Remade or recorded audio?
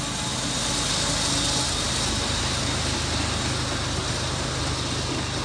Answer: recorded